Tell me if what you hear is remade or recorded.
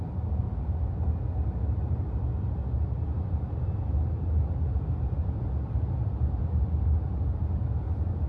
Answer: recorded